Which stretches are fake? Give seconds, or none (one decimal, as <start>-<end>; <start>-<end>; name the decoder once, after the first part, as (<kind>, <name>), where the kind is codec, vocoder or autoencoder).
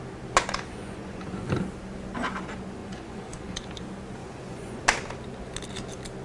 0.7-1.5 (vocoder, Vocos); 2.8-3.7; 4.2-4.8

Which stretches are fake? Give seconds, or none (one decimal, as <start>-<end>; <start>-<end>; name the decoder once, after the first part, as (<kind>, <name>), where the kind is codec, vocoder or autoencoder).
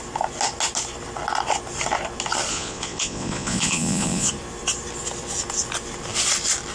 2.5-4.3 (vocoder, Vocos)